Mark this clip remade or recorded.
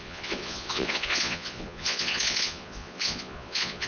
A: remade